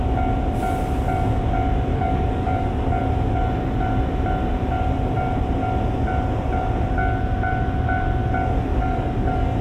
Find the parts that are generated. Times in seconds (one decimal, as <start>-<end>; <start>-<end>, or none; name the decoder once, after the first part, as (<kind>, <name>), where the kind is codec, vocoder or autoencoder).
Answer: 1.9-3.0 (codec, DAC); 8.7-9.6